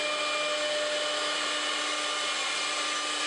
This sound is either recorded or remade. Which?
recorded